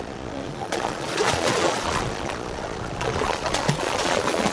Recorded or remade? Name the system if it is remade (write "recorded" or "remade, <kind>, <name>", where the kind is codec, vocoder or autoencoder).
remade, vocoder, Vocos